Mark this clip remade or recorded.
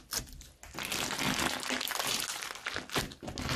recorded